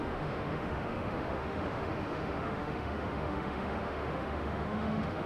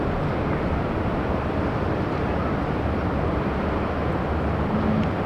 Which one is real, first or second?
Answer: second